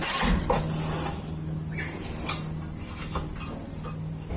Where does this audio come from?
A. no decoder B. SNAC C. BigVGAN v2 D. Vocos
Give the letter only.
A